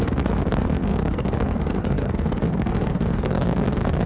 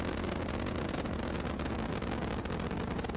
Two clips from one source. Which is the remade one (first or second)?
first